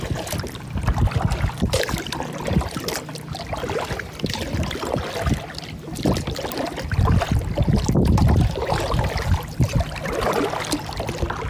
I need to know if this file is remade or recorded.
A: recorded